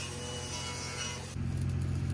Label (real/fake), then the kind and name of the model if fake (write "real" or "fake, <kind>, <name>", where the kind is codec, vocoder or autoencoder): real